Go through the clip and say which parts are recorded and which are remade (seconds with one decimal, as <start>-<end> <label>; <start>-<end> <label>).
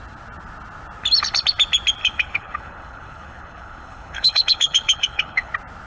0.0-2.0 recorded; 2.0-5.5 remade; 5.5-5.9 recorded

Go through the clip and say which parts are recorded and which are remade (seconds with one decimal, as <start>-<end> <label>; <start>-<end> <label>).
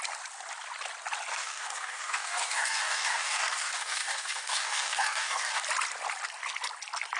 0.0-1.3 recorded; 1.3-5.6 remade; 5.6-7.2 recorded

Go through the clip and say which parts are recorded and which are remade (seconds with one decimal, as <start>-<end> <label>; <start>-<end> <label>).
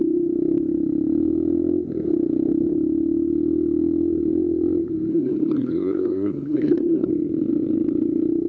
0.0-5.1 recorded; 5.1-7.1 remade; 7.1-8.5 recorded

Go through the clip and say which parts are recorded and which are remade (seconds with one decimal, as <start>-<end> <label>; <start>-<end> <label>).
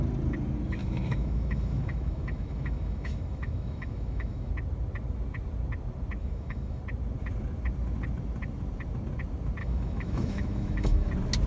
0.0-0.8 recorded; 0.8-4.5 remade; 4.5-6.2 recorded; 6.2-6.8 remade; 6.8-9.6 recorded; 9.6-11.1 remade; 11.1-11.5 recorded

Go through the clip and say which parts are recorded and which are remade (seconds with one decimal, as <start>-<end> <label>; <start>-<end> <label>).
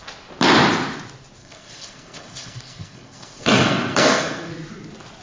0.0-1.4 recorded; 1.4-4.5 remade; 4.5-5.2 recorded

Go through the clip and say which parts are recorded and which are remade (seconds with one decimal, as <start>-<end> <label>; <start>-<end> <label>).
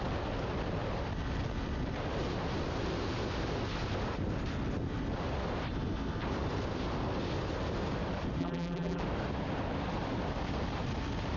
0.0-8.4 recorded; 8.4-9.0 remade; 9.0-11.4 recorded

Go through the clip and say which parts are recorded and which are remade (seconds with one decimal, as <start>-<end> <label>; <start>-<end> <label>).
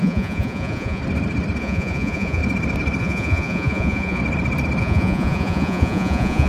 0.0-1.0 remade; 1.0-1.6 recorded; 1.6-2.4 remade; 2.4-3.0 recorded; 3.0-4.2 remade; 4.2-4.8 recorded; 4.8-6.5 remade